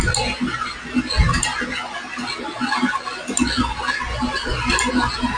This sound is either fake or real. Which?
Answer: real